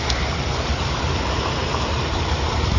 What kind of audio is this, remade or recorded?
remade